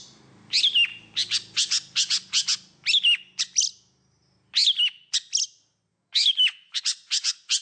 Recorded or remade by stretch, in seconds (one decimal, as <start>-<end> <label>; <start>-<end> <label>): 0.0-5.9 recorded; 5.9-6.8 remade; 6.8-7.6 recorded